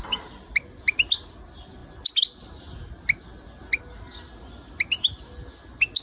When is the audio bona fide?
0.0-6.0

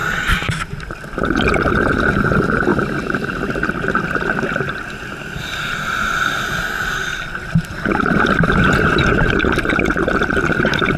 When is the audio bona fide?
0.5-10.3

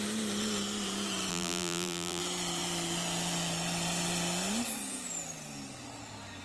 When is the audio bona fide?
0.0-1.3; 2.2-6.4